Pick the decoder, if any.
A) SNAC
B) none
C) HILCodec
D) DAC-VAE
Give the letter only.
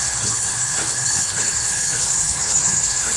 C